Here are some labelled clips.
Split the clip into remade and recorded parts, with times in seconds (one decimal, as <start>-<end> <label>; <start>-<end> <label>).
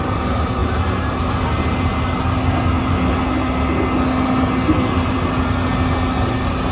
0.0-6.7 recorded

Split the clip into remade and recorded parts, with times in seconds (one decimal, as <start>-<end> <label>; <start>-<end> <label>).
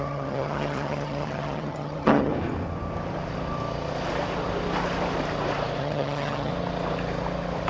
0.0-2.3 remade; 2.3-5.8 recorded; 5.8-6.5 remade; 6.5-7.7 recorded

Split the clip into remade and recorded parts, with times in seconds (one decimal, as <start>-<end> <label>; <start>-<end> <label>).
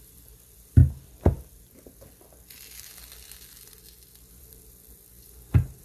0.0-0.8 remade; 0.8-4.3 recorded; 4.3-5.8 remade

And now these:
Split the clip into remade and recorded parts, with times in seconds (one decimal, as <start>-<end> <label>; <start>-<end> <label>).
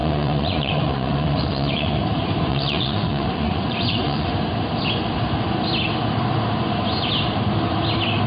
0.0-2.0 remade; 2.0-2.5 recorded; 2.5-4.3 remade; 4.3-8.3 recorded